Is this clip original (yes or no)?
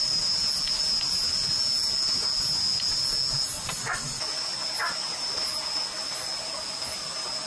yes